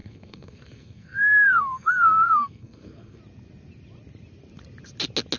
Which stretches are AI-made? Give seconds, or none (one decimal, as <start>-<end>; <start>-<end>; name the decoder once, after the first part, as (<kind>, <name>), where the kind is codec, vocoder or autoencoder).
0.0-3.2 (codec, SNAC)